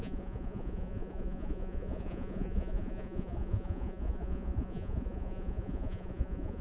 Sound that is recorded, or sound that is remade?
remade